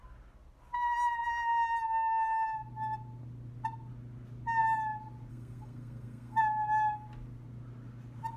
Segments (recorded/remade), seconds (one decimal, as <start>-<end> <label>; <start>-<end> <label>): 0.0-5.3 recorded; 5.3-6.4 remade; 6.4-8.4 recorded